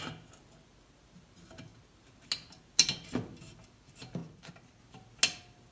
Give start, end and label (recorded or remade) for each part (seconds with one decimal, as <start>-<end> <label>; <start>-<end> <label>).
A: 0.0-5.7 recorded